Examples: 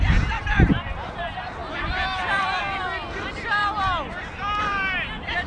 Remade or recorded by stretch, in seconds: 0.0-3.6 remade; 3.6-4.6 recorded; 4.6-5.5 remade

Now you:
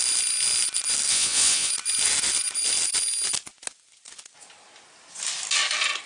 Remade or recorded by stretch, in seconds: 0.0-1.1 recorded; 1.1-1.7 remade; 1.7-6.1 recorded

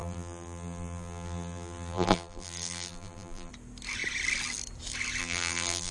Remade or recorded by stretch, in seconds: 0.0-3.5 remade; 3.5-5.2 recorded; 5.2-5.9 remade

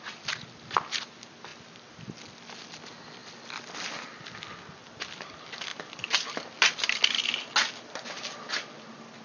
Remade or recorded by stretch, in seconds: 0.0-9.2 recorded

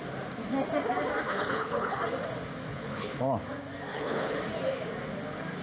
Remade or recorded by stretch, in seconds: 0.0-1.3 recorded; 1.3-2.0 remade; 2.0-2.7 recorded; 2.7-3.2 remade; 3.2-3.9 recorded; 3.9-4.4 remade; 4.4-5.6 recorded

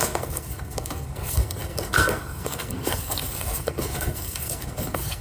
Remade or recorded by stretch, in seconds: 0.0-5.2 remade